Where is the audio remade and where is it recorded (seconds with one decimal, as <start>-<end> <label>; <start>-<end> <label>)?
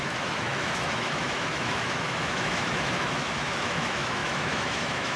0.0-5.2 remade